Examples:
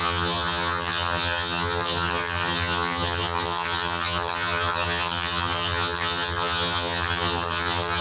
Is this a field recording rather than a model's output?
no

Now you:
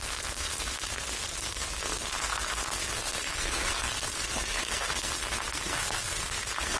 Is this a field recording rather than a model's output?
no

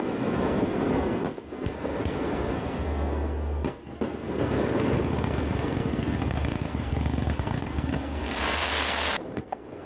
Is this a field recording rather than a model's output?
no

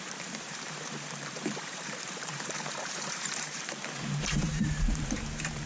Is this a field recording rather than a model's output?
no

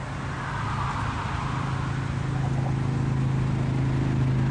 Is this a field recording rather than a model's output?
yes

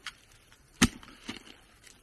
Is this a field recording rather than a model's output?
yes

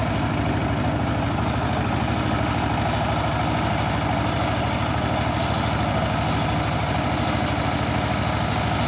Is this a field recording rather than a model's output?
yes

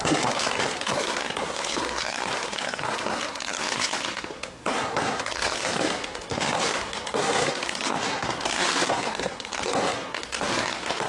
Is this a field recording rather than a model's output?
no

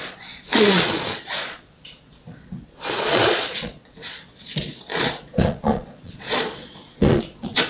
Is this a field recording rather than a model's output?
no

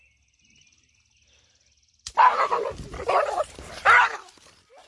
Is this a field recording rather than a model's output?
yes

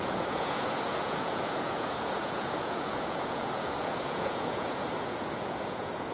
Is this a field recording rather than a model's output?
no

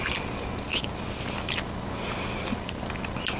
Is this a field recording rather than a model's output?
yes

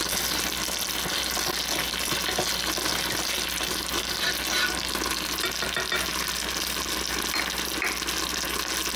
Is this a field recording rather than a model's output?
yes